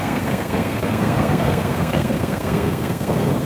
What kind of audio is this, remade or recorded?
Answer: remade